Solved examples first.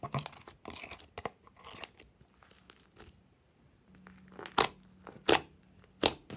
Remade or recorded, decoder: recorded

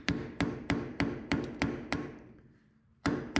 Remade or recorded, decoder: remade, vocoder, BigVGAN v2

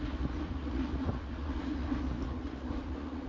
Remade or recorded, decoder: remade, vocoder, Vocos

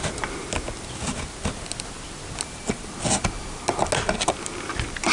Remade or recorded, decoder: recorded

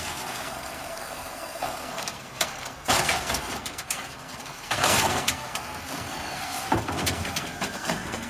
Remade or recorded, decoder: remade, codec, SNAC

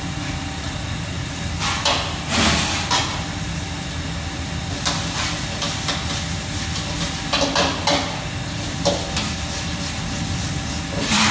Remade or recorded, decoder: recorded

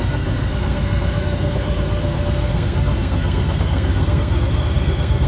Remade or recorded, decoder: remade, codec, SNAC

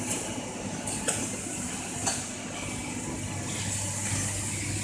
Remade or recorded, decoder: recorded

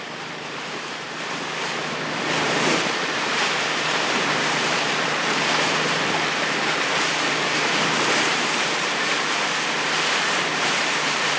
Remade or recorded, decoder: remade, vocoder, BigVGAN v2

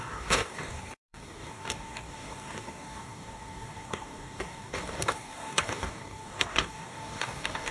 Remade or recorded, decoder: remade, codec, DAC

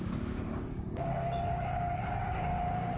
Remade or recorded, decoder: remade, codec, DAC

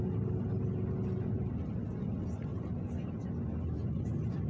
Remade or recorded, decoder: recorded